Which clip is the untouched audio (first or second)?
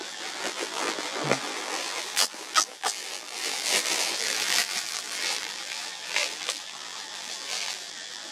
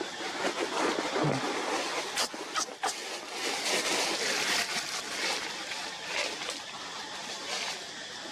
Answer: second